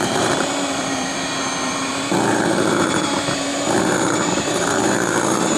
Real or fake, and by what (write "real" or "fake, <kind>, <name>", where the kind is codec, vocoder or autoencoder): fake, vocoder, BigVGAN v2